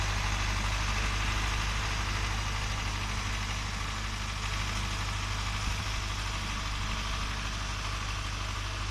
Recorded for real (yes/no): yes